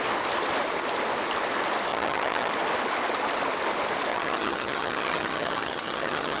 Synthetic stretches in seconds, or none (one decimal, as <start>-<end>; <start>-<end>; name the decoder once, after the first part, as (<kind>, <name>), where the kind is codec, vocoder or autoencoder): 1.9-2.5 (vocoder, HiFi-GAN); 4.1-6.4